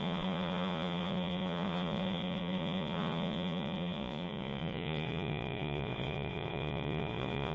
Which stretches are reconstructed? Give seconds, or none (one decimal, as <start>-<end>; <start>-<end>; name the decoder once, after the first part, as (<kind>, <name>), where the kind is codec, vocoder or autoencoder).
0.0-7.5 (vocoder, Vocos)